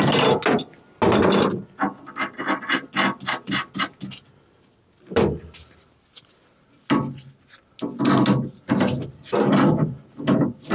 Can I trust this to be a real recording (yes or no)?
yes